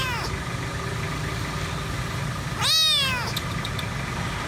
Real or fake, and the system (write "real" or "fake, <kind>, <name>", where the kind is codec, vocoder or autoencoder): real